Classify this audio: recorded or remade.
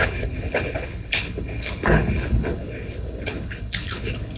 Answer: remade